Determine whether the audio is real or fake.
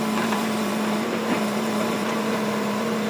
fake